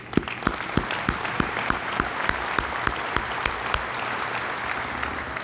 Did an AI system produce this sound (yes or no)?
no